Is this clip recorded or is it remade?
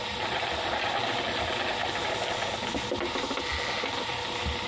recorded